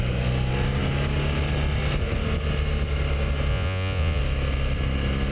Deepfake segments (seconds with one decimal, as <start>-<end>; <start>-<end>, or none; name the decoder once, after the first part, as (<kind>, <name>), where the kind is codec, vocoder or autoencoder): 3.5-4.2 (vocoder, Vocos)